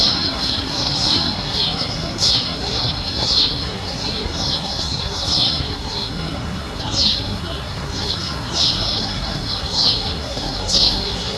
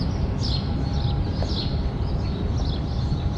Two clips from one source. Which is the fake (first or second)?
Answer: first